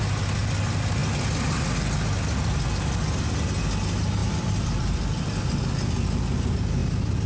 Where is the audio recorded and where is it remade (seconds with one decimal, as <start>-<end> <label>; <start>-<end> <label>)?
0.0-4.2 recorded; 4.2-5.6 remade; 5.6-7.3 recorded